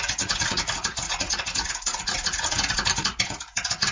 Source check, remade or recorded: remade